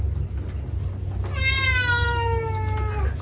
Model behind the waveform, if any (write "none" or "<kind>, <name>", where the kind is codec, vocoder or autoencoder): none